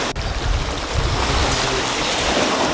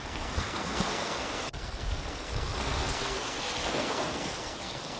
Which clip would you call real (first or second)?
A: first